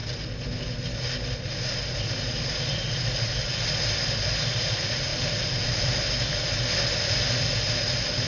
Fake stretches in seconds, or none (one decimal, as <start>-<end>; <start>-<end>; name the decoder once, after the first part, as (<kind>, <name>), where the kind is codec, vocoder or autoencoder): none